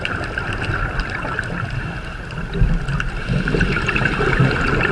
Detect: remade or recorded recorded